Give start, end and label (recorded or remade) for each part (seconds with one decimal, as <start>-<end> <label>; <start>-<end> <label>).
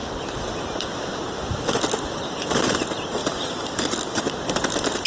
0.0-3.2 recorded; 3.2-4.2 remade; 4.2-5.1 recorded